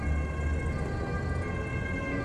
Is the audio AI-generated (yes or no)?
no